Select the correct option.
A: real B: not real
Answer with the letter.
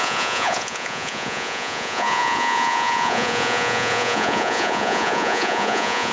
B